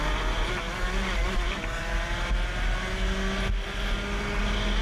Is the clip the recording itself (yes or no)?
yes